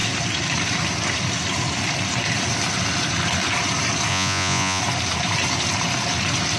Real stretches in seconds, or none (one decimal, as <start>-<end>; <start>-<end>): 0.0-4.1; 4.8-6.6